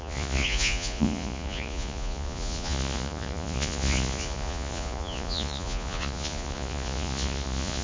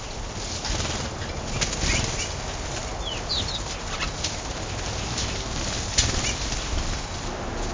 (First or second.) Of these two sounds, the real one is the second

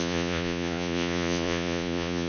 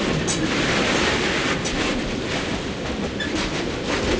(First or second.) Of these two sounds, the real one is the second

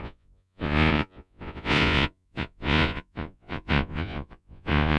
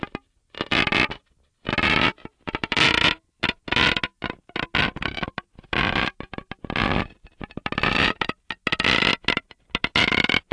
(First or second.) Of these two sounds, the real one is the second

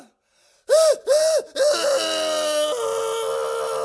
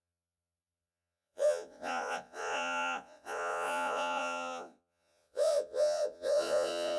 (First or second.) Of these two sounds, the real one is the first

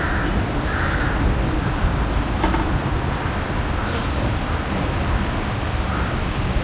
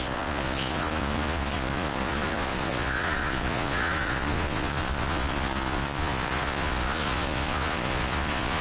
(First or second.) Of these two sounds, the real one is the first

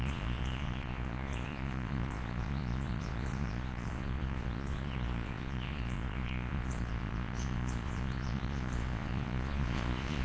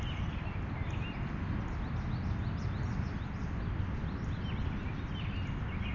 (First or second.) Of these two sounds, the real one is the second